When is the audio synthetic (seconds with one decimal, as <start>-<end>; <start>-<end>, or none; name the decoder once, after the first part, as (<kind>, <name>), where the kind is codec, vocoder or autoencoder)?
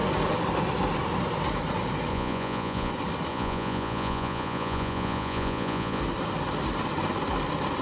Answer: 2.1-2.9 (vocoder, Vocos); 3.3-6.0